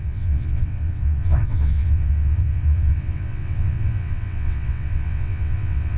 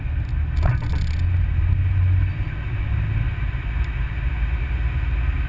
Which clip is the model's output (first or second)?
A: first